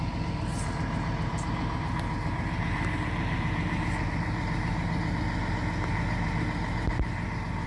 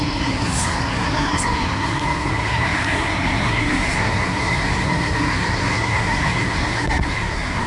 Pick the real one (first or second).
first